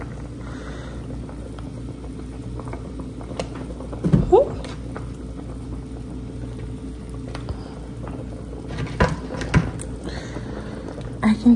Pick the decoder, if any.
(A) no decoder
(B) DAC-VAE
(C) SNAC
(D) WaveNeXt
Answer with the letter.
A